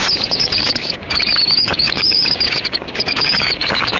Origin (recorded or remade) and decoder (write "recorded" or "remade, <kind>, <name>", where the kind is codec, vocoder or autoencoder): remade, codec, DAC